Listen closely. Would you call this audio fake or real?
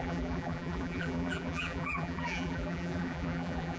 fake